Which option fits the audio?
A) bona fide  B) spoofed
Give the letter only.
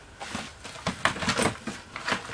B